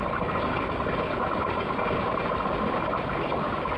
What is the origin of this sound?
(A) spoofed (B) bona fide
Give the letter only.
B